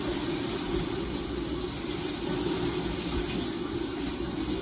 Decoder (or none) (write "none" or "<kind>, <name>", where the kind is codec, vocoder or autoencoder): none